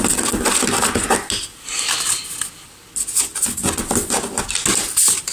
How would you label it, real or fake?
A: real